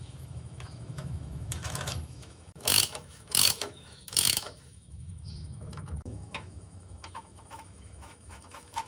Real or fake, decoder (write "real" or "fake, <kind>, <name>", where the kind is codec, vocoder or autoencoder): fake, autoencoder, DAC-VAE